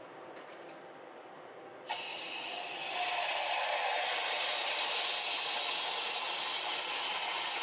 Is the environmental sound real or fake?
real